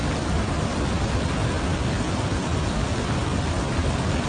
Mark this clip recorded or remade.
recorded